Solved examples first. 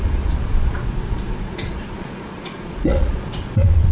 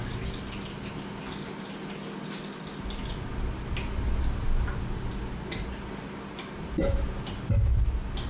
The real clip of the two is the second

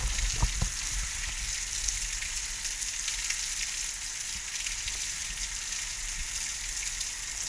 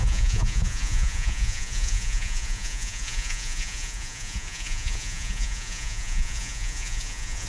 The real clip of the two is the first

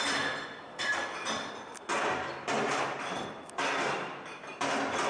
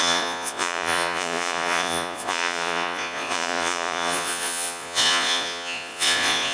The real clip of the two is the first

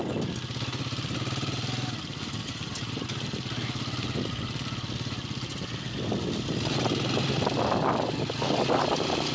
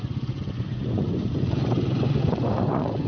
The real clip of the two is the first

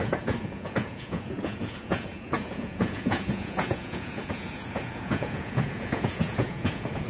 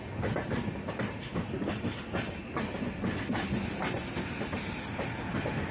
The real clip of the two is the second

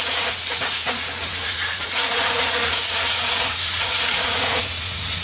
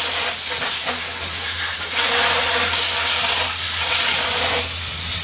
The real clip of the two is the second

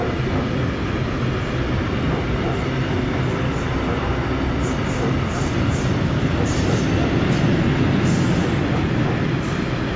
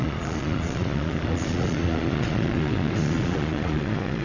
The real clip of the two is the first